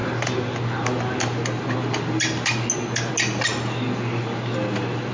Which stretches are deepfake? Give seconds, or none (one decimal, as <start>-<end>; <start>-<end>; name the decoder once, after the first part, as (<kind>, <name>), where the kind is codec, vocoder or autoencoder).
none